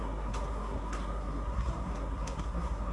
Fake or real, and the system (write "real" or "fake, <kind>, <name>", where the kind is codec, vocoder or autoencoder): fake, codec, SNAC